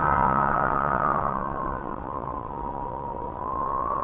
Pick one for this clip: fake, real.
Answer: fake